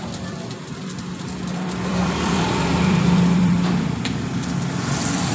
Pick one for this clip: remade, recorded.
remade